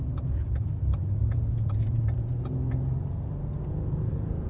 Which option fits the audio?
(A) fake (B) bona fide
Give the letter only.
A